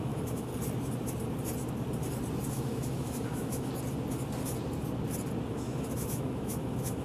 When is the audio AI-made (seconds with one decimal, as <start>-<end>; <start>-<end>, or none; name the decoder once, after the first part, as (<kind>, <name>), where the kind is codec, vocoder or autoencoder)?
0.0-0.5 (autoencoder, DAC-VAE); 2.5-3.7; 5.5-7.0